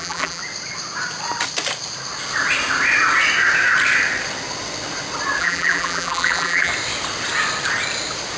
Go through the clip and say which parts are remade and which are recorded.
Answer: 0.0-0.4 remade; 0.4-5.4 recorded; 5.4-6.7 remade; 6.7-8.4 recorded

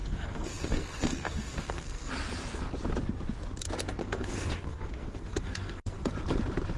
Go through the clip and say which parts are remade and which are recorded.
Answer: 0.0-2.1 remade; 2.1-4.0 recorded; 4.0-6.1 remade; 6.1-6.8 recorded

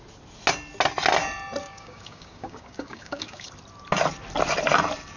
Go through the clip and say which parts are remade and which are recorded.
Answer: 0.0-1.6 recorded; 1.6-3.5 remade; 3.5-5.2 recorded

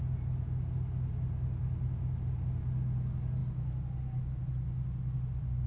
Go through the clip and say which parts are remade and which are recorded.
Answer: 0.0-5.7 recorded

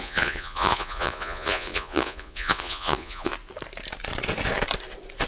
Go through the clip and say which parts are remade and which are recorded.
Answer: 0.0-3.3 remade; 3.3-5.3 recorded

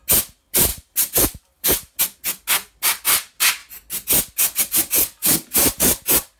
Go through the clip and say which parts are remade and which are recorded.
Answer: 0.0-0.7 recorded; 0.7-2.0 remade; 2.0-6.4 recorded

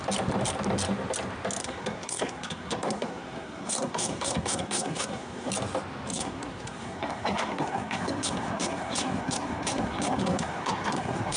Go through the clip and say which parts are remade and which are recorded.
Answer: 0.0-1.6 recorded; 1.6-5.5 remade; 5.5-6.1 recorded; 6.1-11.4 remade